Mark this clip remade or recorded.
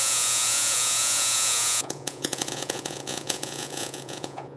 remade